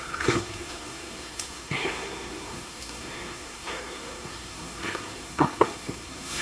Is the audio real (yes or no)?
no